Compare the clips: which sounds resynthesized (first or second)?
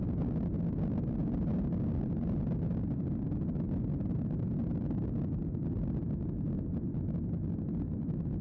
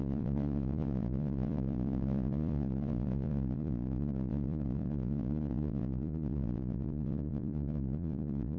second